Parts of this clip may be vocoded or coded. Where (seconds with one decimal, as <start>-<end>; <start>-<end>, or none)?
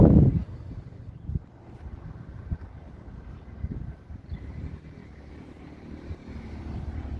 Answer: 5.0-6.2